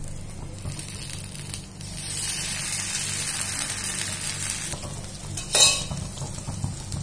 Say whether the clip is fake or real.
real